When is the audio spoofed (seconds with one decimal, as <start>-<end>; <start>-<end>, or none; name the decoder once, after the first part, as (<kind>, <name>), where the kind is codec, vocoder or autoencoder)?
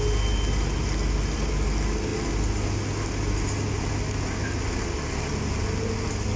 none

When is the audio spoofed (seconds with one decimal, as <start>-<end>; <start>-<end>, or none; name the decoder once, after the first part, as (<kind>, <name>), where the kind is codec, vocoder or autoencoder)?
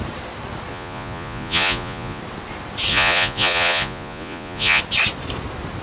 0.7-2.2 (vocoder, Vocos); 2.9-4.8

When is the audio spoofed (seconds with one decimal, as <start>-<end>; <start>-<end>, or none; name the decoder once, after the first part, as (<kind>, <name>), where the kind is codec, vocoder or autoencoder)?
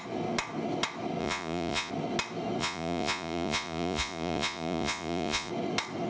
1.2-1.9 (vocoder, Vocos); 2.6-5.5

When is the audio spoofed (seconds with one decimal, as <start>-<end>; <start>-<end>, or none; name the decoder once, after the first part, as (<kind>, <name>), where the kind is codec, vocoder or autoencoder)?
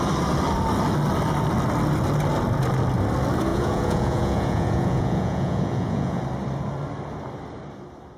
3.5-6.2 (vocoder, Vocos)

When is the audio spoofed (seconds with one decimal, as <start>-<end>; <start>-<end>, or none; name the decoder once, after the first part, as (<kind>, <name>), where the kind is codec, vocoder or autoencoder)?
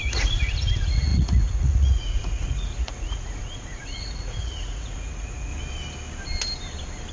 0.0-5.5 (vocoder, Vocos)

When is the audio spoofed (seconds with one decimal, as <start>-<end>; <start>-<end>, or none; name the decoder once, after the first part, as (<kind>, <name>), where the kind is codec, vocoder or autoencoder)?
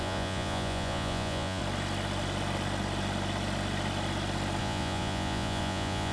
0.0-1.6 (vocoder, Vocos); 4.6-6.1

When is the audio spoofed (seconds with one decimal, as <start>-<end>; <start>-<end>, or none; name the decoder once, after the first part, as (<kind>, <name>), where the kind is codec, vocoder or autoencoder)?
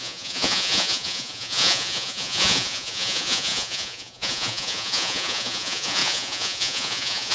0.0-7.3 (vocoder, Vocos)